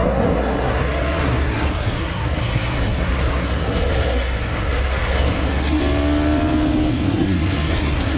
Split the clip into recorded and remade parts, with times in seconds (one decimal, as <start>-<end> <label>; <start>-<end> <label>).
0.0-5.8 remade; 5.8-6.9 recorded; 6.9-8.2 remade